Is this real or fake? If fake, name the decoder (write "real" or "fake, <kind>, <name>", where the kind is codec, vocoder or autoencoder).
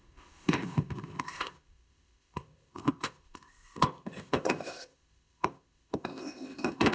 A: fake, codec, ZipCodec